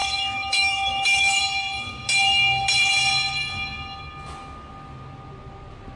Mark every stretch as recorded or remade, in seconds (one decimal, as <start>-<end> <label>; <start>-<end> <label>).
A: 0.0-1.4 remade; 1.4-6.0 recorded